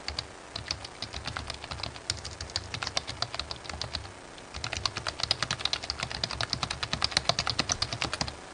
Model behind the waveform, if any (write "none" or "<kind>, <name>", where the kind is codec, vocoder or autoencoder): none